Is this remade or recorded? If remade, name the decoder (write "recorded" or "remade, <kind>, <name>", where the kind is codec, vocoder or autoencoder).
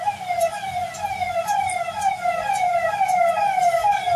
recorded